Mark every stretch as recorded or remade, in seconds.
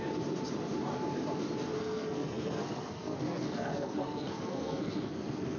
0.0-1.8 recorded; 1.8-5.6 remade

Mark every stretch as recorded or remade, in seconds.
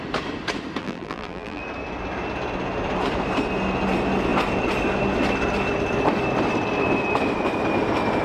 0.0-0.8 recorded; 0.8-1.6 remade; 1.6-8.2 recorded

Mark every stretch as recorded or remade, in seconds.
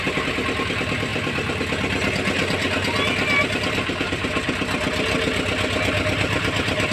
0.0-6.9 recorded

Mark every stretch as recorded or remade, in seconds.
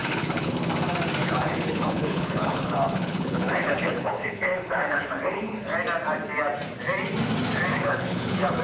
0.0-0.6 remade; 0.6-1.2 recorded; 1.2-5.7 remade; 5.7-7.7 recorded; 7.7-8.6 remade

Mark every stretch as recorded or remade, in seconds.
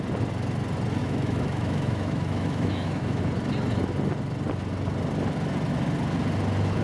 0.0-1.0 recorded; 1.0-3.2 remade; 3.2-6.8 recorded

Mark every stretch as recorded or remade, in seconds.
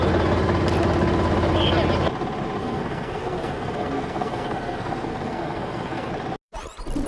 0.0-2.6 recorded; 2.6-6.1 remade; 6.1-7.1 recorded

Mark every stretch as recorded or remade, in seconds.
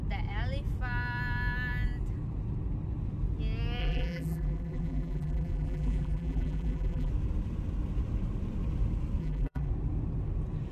0.0-3.8 recorded; 3.8-7.1 remade; 7.1-9.2 recorded; 9.2-9.7 remade; 9.7-10.7 recorded